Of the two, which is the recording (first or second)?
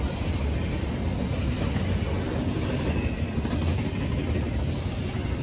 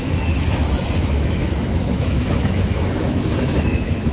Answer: first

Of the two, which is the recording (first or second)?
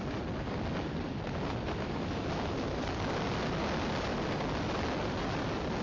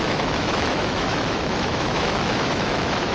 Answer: first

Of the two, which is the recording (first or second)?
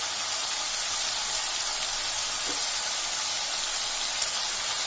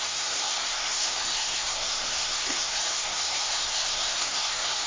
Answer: first